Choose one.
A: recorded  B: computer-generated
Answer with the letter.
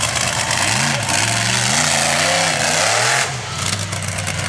A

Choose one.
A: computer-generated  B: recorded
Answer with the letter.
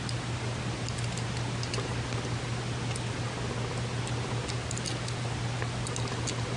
B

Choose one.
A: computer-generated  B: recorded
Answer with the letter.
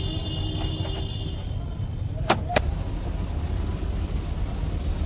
B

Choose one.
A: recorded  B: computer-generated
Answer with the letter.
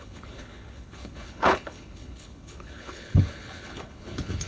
B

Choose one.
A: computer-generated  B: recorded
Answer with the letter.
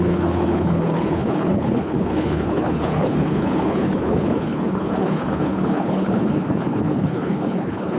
A